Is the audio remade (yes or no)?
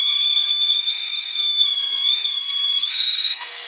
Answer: yes